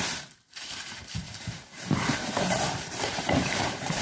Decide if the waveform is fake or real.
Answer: fake